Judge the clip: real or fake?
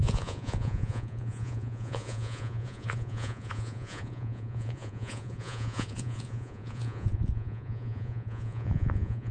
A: fake